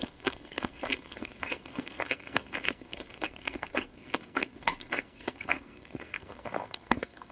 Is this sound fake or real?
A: fake